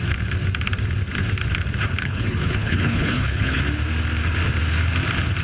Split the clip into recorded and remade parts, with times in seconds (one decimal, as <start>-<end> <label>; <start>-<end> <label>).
0.0-2.0 recorded; 2.0-3.6 remade; 3.6-5.4 recorded